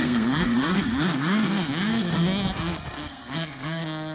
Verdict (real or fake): fake